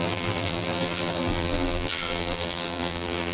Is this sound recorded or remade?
remade